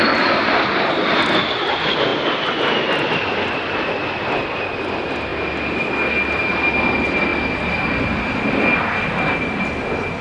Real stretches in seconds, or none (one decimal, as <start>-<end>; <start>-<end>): 0.0-10.2